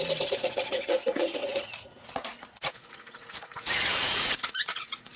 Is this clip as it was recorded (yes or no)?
no